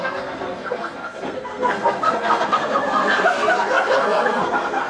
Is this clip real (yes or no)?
no